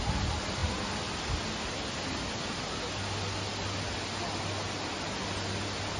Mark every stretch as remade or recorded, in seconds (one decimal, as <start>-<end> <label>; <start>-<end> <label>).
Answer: 0.0-6.0 recorded